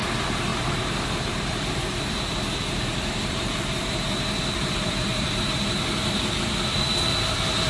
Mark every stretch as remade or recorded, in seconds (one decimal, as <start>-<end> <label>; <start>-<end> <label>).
0.0-6.9 remade; 6.9-7.7 recorded